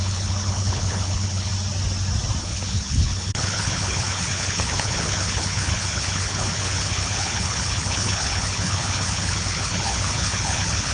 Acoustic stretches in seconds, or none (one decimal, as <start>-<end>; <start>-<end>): 1.5-2.4